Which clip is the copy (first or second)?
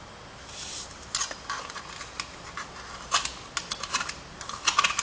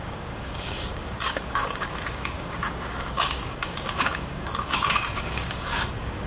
second